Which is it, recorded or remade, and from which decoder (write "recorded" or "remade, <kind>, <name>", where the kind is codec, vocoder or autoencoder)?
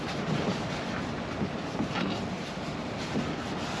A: recorded